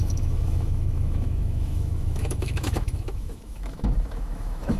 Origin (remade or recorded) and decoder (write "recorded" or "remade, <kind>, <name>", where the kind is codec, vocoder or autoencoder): remade, autoencoder, DAC-VAE